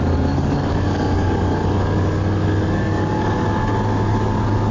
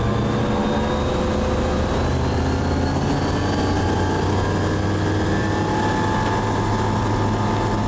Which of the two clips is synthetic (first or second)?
first